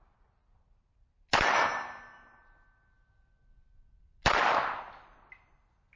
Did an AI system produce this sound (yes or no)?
no